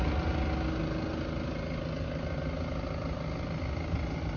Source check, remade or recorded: recorded